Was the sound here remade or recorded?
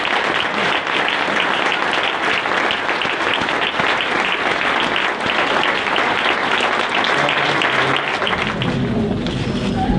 recorded